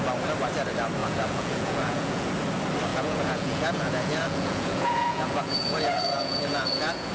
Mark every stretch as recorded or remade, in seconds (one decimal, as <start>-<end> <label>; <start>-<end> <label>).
0.0-1.0 recorded; 1.0-2.3 remade; 2.3-2.9 recorded; 2.9-7.1 remade